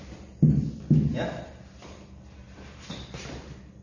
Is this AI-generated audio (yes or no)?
no